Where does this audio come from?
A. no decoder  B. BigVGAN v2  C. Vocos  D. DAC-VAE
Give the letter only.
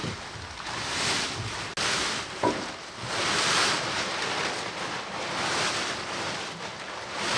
A